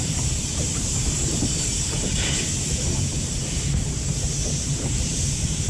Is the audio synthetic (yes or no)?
yes